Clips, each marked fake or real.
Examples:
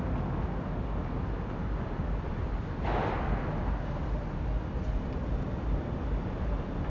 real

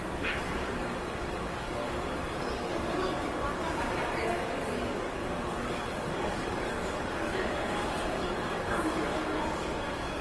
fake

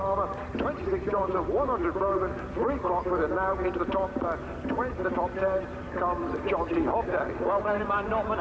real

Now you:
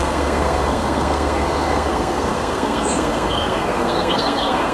fake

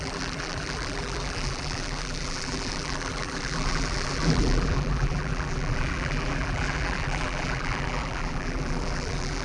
fake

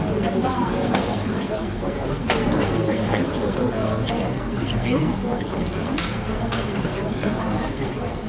fake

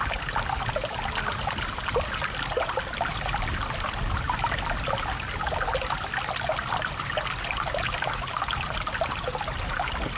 real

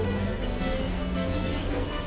fake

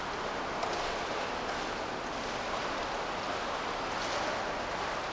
real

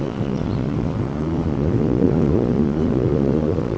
fake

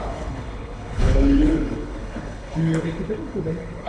fake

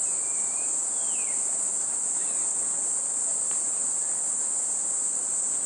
real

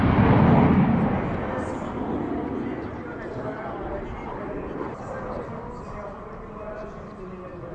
real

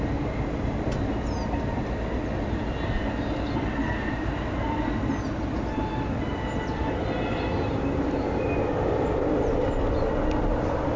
real